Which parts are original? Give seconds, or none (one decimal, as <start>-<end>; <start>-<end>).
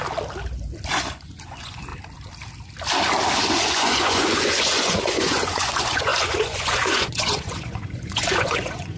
0.0-0.9; 1.9-3.5